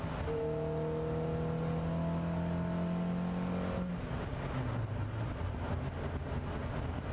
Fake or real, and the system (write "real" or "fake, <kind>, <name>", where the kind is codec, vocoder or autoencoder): real